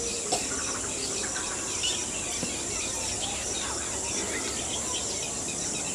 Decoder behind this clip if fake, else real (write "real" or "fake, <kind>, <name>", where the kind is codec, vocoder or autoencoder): real